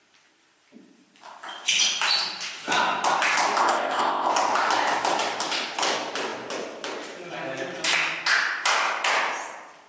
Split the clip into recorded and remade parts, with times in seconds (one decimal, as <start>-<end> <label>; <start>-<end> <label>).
0.0-3.6 recorded; 3.6-4.3 remade; 4.3-9.9 recorded